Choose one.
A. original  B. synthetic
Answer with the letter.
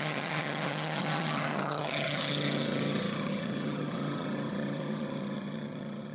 B